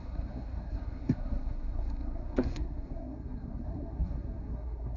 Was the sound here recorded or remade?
remade